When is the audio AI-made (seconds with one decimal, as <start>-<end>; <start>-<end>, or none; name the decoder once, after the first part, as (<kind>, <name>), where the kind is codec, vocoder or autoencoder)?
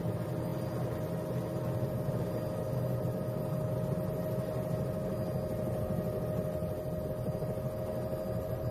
none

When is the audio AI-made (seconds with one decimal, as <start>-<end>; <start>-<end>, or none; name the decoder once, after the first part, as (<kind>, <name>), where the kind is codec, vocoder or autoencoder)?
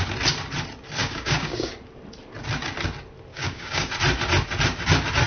1.0-1.7 (codec, DAC); 3.3-3.9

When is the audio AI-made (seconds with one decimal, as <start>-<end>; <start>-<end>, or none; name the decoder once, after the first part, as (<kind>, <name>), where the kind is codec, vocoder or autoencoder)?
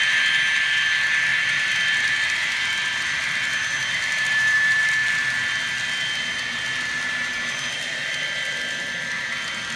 none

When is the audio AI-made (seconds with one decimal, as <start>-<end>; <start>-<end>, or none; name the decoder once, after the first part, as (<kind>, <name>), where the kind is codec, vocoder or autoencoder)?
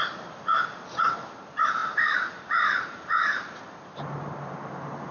0.5-1.1 (vocoder, BigVGAN v2); 1.8-5.1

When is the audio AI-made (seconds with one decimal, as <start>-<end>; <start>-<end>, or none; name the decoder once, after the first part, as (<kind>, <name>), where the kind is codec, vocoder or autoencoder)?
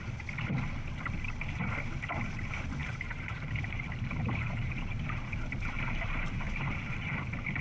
2.8-7.6 (vocoder, BigVGAN v2)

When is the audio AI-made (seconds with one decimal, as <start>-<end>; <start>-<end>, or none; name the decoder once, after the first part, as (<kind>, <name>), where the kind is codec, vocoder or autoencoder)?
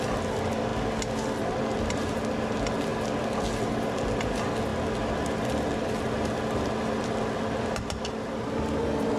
none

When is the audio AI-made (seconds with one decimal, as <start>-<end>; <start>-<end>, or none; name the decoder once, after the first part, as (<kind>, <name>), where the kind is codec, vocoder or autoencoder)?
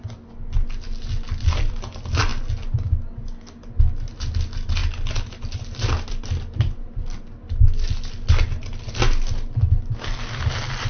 none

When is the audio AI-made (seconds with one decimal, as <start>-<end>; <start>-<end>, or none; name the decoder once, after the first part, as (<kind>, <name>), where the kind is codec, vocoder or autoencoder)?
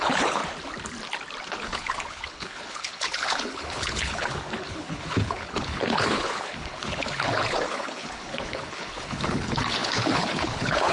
0.0-0.4 (codec, HILCodec); 1.5-10.9